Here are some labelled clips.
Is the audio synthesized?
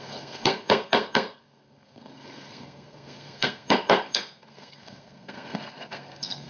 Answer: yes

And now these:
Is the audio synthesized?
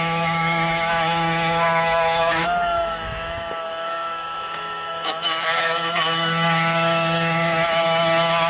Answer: yes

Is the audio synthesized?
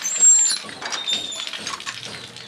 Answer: no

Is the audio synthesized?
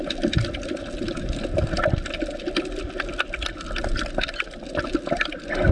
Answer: no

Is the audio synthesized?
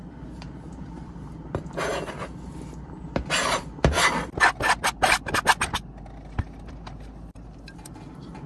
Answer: no